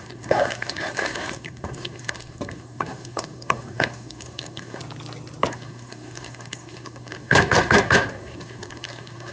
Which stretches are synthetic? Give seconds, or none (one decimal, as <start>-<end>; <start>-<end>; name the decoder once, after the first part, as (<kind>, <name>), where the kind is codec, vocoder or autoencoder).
0.0-4.8 (codec, SNAC); 5.5-9.3